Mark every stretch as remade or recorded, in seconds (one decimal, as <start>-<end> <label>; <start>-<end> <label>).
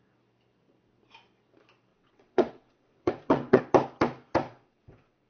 0.0-1.9 recorded; 1.9-3.6 remade; 3.6-4.4 recorded; 4.4-5.3 remade